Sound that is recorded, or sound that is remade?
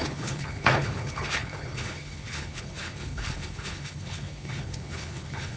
remade